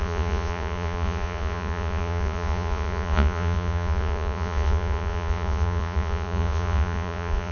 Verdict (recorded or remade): remade